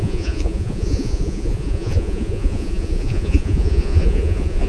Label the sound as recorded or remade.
remade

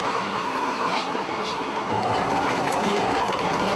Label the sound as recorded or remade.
remade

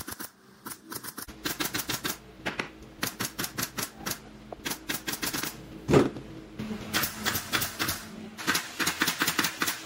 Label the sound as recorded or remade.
recorded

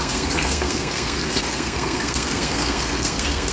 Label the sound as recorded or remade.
remade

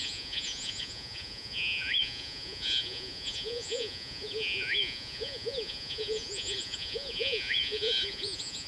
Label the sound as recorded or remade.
remade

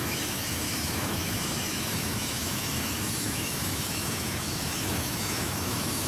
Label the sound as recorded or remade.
remade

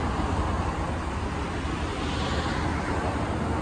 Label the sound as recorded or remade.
recorded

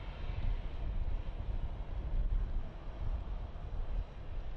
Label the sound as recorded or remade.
recorded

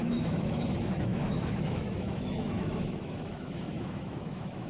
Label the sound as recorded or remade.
remade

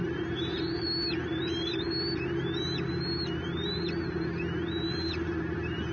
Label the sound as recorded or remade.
recorded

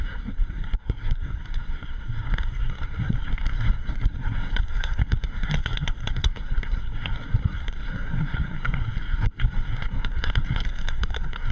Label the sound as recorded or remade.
remade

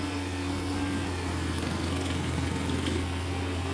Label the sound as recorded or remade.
remade